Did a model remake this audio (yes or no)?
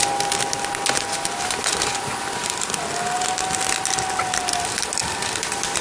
no